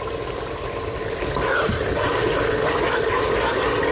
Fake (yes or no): no